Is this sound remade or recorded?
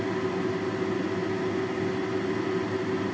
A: recorded